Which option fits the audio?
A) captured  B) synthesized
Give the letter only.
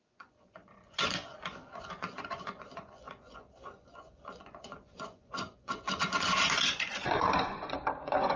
B